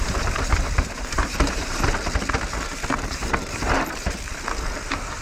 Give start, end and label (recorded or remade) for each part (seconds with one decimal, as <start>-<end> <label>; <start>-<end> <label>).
0.0-1.9 remade; 1.9-2.5 recorded; 2.5-5.2 remade